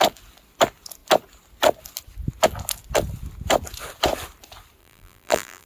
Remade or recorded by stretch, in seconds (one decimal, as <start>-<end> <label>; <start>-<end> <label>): 0.0-4.8 recorded; 4.8-5.7 remade